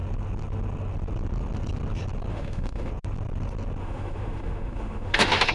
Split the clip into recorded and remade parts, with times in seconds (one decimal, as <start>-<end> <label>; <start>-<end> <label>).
0.0-2.3 recorded; 2.3-2.9 remade; 2.9-3.8 recorded; 3.8-5.5 remade